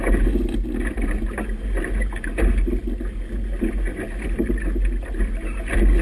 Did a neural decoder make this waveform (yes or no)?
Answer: no